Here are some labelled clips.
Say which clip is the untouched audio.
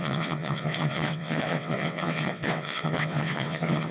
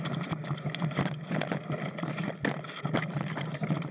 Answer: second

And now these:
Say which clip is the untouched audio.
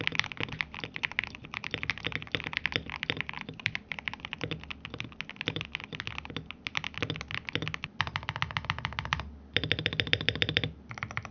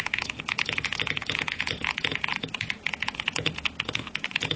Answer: first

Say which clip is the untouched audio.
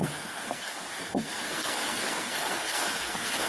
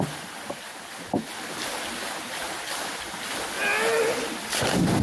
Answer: second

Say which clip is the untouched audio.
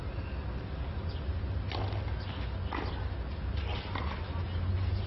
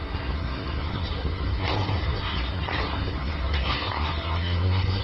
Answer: first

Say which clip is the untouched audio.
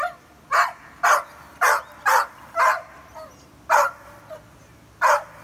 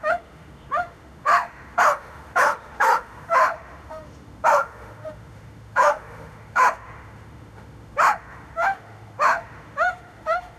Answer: first